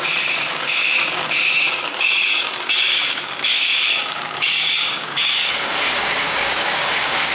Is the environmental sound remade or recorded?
remade